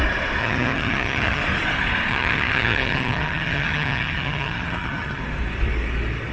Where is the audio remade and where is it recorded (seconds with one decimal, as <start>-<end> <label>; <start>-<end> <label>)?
0.0-0.4 recorded; 0.4-1.4 remade; 1.4-2.1 recorded; 2.1-5.2 remade; 5.2-6.3 recorded